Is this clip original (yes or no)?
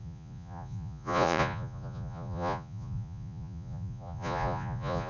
no